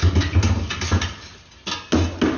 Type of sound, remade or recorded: recorded